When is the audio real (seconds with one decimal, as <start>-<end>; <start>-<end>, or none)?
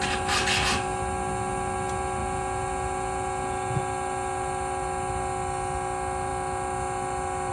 0.0-2.2; 3.8-7.5